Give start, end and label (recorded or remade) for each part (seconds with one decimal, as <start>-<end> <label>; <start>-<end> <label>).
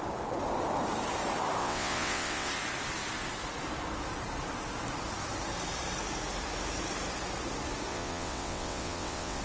0.0-1.6 recorded; 1.6-2.5 remade; 2.5-7.9 recorded; 7.9-9.4 remade